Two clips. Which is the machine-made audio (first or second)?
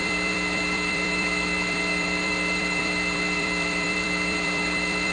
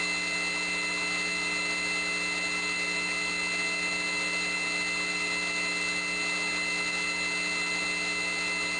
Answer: first